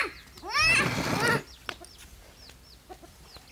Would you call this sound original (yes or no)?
yes